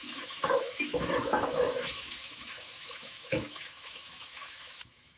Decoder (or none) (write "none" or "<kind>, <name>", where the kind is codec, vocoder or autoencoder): autoencoder, DAC-VAE